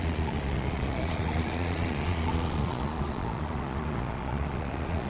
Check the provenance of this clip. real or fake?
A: fake